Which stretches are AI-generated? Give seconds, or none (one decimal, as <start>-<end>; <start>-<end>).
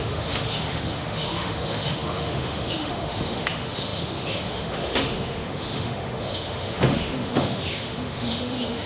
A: 0.0-8.9